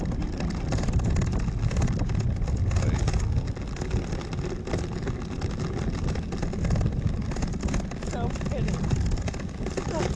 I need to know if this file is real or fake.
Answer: real